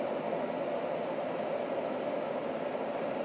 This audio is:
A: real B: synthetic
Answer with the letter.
A